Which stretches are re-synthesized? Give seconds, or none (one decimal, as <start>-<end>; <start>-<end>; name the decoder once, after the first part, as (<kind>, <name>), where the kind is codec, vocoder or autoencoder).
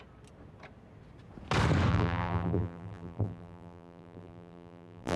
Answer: 1.9-5.2 (vocoder, BigVGAN v2)